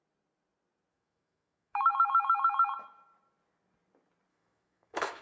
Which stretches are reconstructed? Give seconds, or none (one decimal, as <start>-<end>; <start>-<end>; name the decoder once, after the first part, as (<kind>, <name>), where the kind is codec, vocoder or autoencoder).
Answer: 0.9-1.9 (autoencoder, DAC-VAE); 4.3-5.2

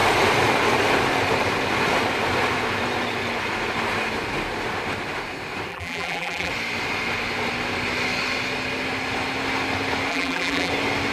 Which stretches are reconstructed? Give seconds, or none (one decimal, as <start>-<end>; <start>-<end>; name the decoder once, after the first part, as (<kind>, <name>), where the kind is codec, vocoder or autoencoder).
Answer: 5.7-6.5 (vocoder, BigVGAN v2); 10.1-10.7

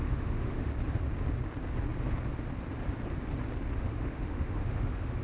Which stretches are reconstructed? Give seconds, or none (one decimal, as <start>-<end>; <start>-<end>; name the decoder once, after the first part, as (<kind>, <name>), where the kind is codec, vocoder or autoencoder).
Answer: 0.0-0.7 (autoencoder, DAC-VAE); 3.8-5.2

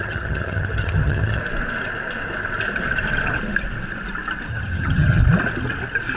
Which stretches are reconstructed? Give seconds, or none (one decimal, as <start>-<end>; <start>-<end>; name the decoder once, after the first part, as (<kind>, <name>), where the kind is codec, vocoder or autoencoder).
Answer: 0.0-1.4 (vocoder, HiFi-GAN); 4.5-5.2

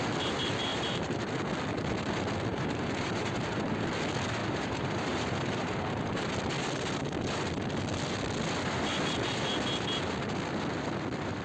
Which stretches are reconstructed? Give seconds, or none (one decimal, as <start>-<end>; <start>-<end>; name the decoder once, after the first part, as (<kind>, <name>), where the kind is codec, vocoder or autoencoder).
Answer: 0.7-1.5 (vocoder, BigVGAN v2); 2.5-3.9; 4.4-6.3

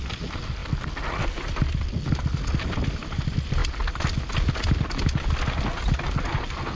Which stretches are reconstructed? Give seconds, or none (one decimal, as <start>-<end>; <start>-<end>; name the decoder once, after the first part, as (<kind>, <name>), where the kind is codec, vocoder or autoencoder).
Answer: none